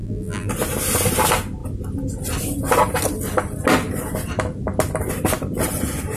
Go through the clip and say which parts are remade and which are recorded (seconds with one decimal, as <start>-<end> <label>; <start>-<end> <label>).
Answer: 0.0-0.5 remade; 0.5-6.2 recorded